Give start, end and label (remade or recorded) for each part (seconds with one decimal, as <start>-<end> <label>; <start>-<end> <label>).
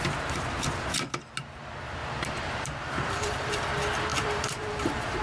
0.0-2.0 recorded; 2.0-3.6 remade; 3.6-4.1 recorded; 4.1-5.2 remade